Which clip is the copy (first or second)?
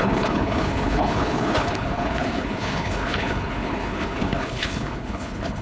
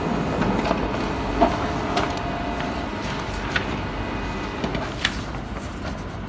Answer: first